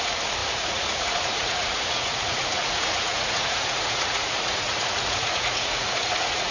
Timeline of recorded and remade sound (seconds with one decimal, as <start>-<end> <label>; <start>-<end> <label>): 0.0-6.5 remade